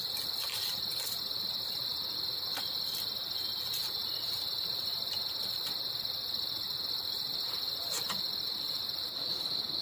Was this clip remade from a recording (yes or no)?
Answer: yes